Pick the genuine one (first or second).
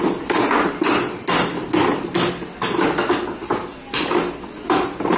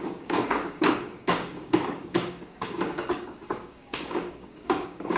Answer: first